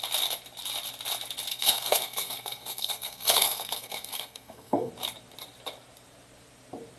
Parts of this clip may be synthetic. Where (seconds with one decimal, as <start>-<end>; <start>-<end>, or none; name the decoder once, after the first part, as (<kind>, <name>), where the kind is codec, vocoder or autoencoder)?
1.5-4.9 (codec, SNAC)